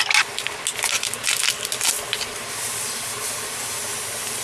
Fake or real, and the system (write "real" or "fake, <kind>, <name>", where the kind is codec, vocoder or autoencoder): real